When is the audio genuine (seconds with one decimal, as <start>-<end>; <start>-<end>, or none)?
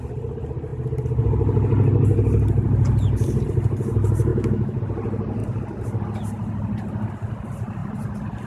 0.0-4.3; 4.8-8.5